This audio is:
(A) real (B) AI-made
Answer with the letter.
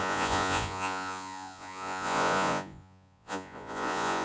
B